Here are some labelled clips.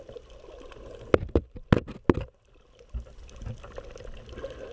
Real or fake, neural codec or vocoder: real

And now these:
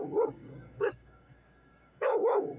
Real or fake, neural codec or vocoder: fake, codec, DAC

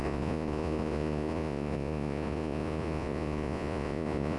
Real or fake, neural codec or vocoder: fake, vocoder, Vocos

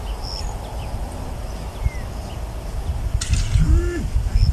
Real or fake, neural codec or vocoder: real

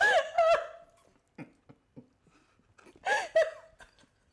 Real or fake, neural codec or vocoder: real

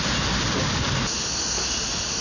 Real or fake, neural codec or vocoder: real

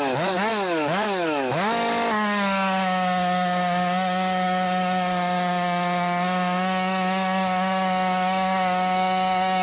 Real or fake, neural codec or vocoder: fake, codec, DAC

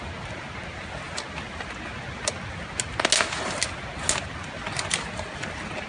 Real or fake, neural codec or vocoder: real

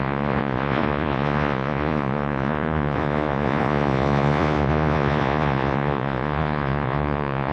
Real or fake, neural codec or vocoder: fake, vocoder, Vocos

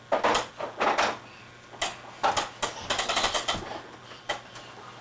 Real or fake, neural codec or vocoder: real